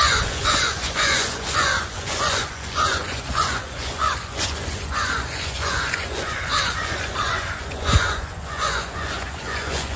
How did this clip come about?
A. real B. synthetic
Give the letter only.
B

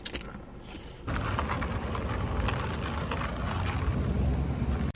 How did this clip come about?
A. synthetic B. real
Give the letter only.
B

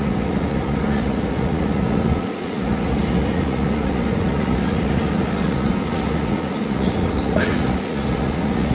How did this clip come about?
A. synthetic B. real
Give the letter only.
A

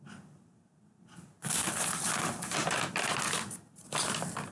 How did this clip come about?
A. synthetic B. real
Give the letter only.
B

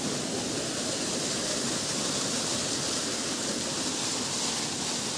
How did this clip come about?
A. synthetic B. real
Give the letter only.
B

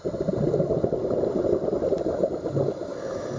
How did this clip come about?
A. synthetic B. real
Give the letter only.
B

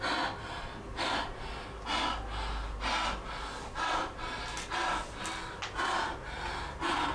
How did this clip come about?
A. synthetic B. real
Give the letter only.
B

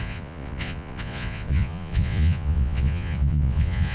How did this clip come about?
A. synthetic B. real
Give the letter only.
A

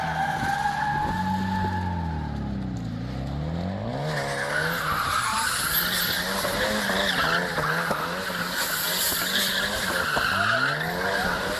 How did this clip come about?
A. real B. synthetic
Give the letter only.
A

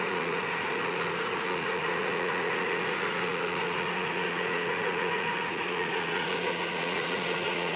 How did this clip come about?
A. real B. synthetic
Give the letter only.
B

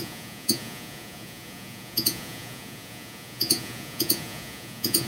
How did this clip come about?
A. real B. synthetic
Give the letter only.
B